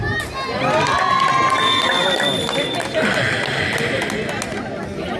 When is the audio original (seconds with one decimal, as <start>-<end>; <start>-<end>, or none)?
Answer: 0.0-5.2